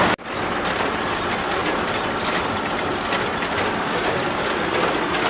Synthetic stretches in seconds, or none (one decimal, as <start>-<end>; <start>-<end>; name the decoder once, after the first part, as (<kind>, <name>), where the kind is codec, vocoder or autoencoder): 3.8-4.5 (codec, DAC)